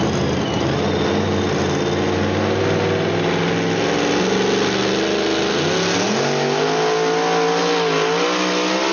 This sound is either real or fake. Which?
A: real